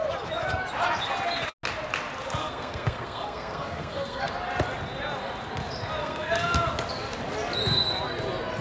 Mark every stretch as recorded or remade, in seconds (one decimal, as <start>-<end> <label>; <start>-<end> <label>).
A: 0.0-2.4 recorded; 2.4-4.3 remade; 4.3-6.0 recorded; 6.0-6.7 remade; 6.7-8.6 recorded